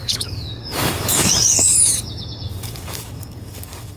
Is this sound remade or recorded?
remade